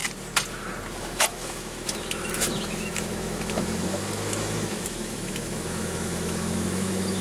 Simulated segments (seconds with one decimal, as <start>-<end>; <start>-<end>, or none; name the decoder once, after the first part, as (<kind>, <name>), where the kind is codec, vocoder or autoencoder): 1.0-7.2 (autoencoder, DAC-VAE)